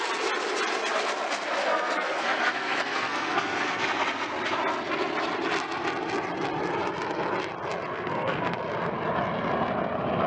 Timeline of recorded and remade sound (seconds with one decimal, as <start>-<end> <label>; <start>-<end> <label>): 0.0-1.6 recorded; 1.6-3.8 remade; 3.8-7.9 recorded; 7.9-8.6 remade; 8.6-10.3 recorded